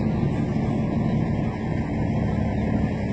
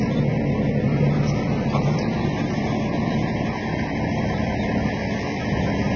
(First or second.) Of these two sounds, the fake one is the second